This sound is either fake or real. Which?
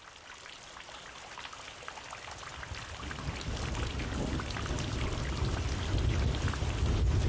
real